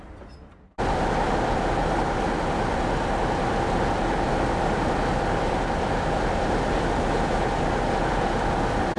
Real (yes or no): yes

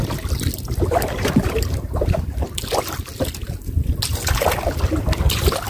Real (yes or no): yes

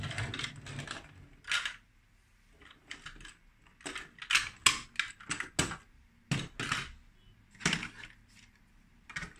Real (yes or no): yes